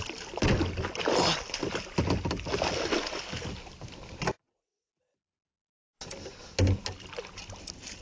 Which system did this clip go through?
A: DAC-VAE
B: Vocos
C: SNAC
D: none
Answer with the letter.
D